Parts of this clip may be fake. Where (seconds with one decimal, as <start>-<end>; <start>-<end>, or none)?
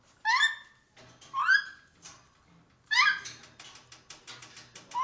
none